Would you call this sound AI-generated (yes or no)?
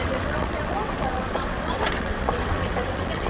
yes